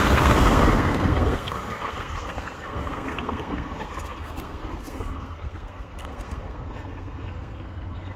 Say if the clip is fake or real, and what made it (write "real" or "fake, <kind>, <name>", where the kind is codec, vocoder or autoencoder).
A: fake, codec, SNAC